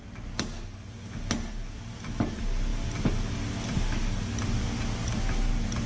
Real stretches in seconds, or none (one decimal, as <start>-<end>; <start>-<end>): 0.0-5.9